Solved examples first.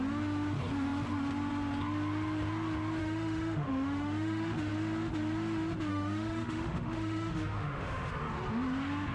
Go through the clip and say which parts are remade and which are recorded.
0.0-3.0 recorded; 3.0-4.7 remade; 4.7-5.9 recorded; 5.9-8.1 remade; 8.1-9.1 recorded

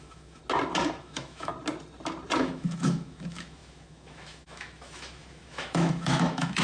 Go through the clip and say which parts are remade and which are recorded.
0.0-0.4 remade; 0.4-1.0 recorded; 1.0-1.5 remade; 1.5-2.4 recorded; 2.4-6.6 remade

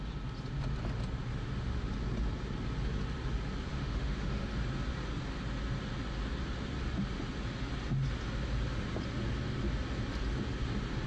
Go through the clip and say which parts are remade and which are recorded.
0.0-1.3 recorded; 1.3-1.9 remade; 1.9-3.7 recorded; 3.7-4.5 remade; 4.5-11.1 recorded

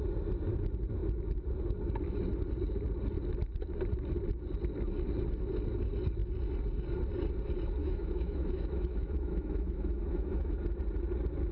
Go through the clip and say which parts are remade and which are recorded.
0.0-7.8 recorded; 7.8-10.6 remade; 10.6-11.5 recorded

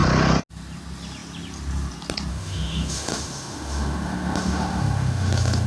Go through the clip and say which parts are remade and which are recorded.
0.0-2.3 recorded; 2.3-5.7 remade

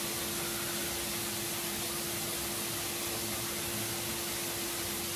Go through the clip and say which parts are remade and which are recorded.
0.0-5.2 recorded